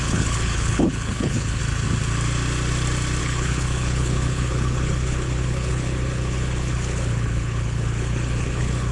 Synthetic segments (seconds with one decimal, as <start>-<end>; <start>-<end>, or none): 0.0-1.6; 3.2-8.9

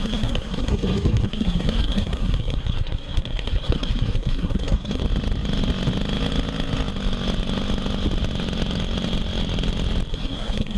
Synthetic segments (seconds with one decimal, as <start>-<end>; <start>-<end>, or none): 0.0-5.0; 10.1-10.8

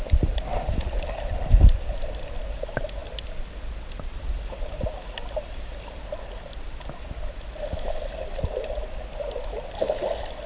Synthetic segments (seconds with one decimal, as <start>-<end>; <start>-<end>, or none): 0.5-1.1

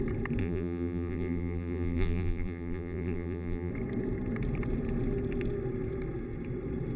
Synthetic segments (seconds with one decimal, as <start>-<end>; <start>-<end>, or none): 0.4-3.7